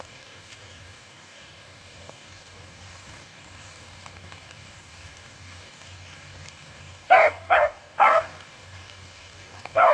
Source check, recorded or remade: remade